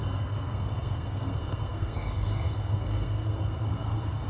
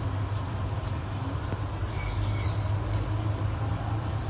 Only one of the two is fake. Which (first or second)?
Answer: first